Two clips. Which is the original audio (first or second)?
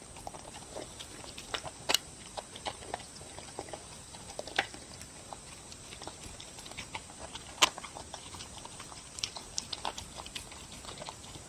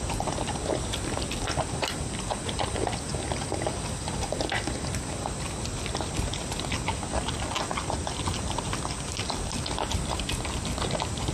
second